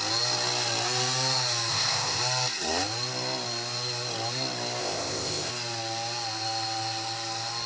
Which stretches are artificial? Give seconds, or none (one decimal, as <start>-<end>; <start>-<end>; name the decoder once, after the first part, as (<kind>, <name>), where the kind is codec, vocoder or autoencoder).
1.7-2.2 (codec, ZipCodec); 4.8-5.5